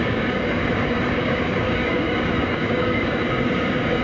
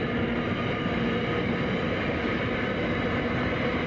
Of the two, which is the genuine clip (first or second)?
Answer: second